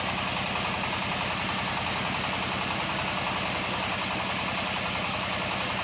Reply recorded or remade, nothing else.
recorded